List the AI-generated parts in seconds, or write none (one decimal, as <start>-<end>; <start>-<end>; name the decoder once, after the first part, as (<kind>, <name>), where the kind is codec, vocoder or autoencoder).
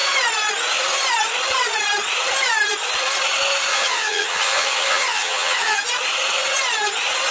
3.7-5.8 (vocoder, HiFi-GAN)